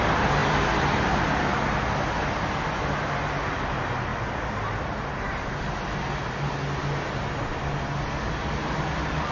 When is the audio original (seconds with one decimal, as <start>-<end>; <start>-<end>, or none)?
0.0-0.4; 1.4-9.3